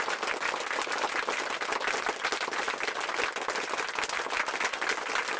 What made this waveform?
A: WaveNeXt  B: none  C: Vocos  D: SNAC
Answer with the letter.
B